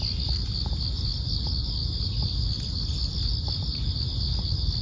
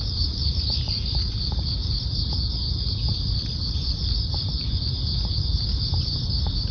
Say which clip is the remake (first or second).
second